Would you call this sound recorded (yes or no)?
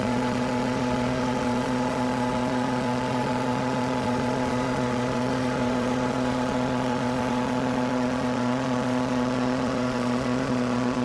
no